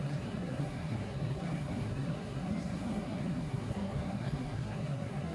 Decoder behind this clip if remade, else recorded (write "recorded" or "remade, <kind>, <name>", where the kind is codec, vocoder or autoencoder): remade, codec, SNAC